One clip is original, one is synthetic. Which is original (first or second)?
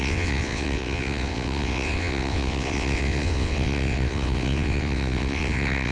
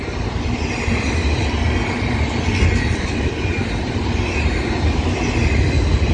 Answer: second